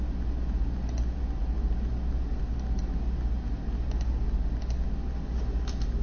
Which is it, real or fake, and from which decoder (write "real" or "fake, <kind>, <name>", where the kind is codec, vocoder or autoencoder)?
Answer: real